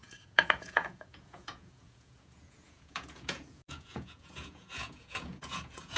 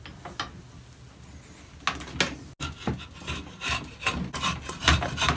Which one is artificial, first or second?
first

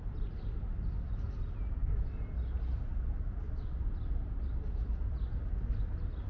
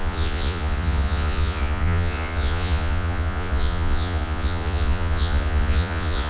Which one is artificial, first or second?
second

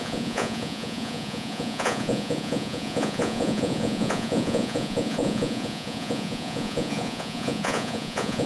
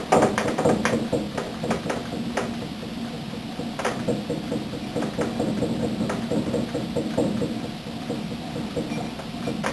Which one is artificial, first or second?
first